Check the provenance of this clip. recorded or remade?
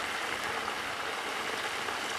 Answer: recorded